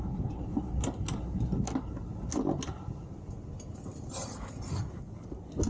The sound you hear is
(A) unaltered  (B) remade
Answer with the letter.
A